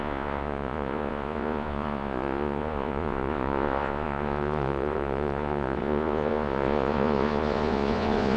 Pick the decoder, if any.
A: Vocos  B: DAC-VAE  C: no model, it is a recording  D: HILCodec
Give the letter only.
A